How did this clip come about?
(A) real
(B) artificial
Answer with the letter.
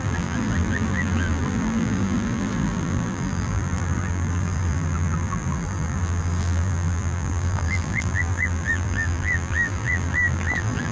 B